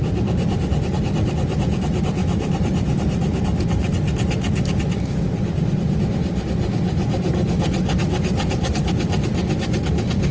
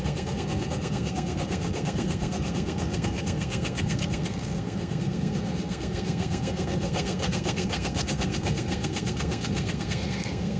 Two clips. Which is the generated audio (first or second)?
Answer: second